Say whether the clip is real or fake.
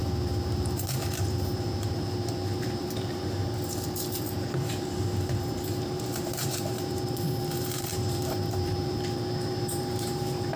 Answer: fake